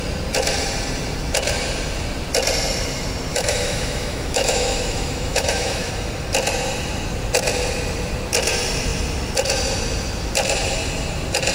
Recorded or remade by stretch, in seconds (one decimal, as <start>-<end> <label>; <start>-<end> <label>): 0.0-3.3 recorded; 3.3-5.9 remade; 5.9-11.5 recorded